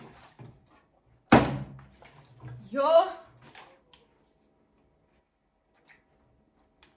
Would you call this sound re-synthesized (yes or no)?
no